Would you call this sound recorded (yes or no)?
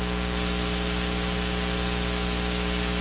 yes